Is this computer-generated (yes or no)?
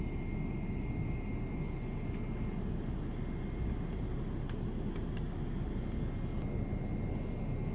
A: no